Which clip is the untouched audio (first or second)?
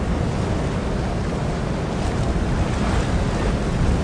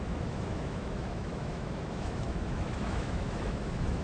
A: first